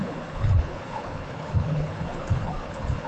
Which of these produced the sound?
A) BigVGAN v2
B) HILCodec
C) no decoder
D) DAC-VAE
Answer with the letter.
B